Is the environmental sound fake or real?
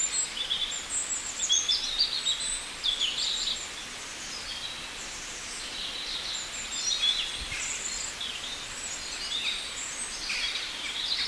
real